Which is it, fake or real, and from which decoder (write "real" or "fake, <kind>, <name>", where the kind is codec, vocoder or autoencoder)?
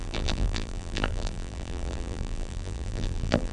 fake, vocoder, BigVGAN v2